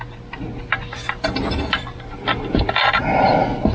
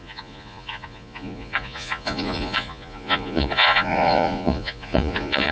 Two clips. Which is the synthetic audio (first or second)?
second